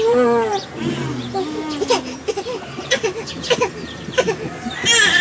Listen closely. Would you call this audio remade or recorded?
recorded